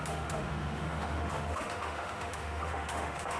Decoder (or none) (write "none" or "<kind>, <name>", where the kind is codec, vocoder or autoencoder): autoencoder, DAC-VAE